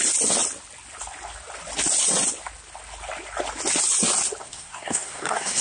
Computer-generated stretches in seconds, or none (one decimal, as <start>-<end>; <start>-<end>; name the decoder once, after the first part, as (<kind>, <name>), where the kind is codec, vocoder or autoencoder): 4.4-5.6 (codec, SNAC)